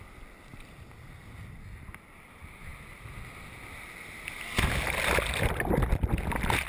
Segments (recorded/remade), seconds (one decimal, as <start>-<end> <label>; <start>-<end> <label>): 0.0-0.5 recorded; 0.5-1.3 remade; 1.3-6.7 recorded